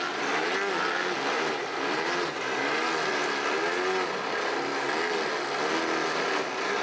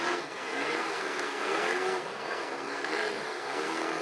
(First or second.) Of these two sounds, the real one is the first